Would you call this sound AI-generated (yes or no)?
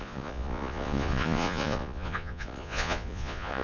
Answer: yes